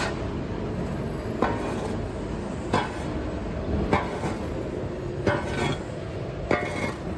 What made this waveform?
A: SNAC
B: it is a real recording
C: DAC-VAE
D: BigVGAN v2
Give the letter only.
B